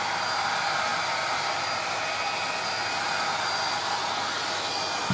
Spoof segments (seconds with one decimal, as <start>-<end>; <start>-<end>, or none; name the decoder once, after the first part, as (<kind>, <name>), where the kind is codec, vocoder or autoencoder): none